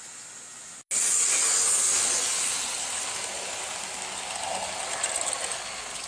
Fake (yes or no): no